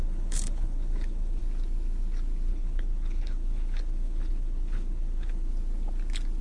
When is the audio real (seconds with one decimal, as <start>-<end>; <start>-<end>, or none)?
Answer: 1.4-2.5; 5.5-6.4